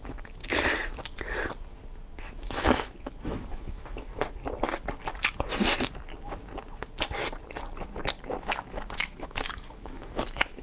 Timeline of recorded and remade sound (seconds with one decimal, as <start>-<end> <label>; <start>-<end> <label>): 0.0-0.4 remade; 0.4-2.2 recorded; 2.2-4.1 remade; 4.1-8.3 recorded; 8.3-10.6 remade